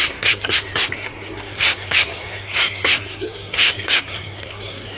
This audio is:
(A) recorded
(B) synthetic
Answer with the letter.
B